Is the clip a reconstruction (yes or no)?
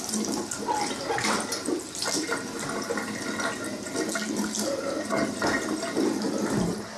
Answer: no